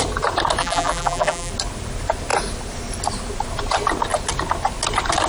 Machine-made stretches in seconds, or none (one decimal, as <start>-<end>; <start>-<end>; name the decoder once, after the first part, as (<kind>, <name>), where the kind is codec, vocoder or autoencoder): 0.6-1.5 (vocoder, BigVGAN v2)